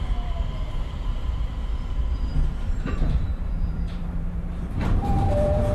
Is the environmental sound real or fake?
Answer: fake